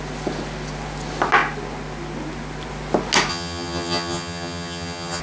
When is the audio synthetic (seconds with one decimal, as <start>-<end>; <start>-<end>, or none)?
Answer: 3.3-5.2